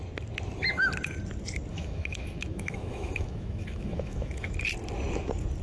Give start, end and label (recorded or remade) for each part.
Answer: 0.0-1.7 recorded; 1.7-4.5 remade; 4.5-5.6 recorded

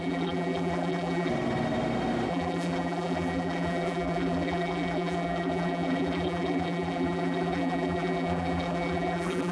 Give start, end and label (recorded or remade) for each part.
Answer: 0.0-1.3 remade; 1.3-2.3 recorded; 2.3-9.5 remade